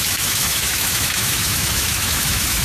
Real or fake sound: fake